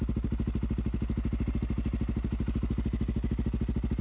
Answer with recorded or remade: recorded